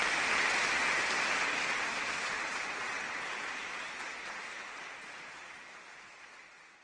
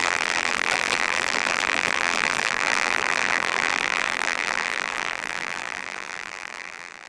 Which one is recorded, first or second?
first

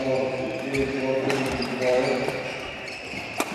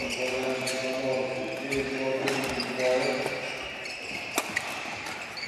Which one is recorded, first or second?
second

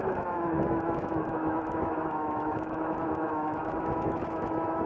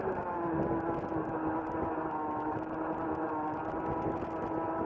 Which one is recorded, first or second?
second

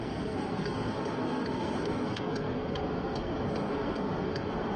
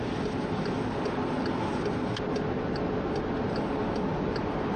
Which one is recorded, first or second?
second